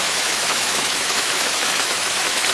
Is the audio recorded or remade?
remade